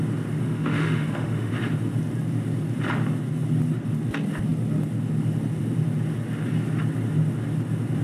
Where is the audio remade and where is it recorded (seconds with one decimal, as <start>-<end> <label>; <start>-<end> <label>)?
0.0-0.4 recorded; 0.4-1.5 remade; 1.5-8.0 recorded